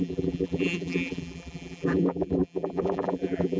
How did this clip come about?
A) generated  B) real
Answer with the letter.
A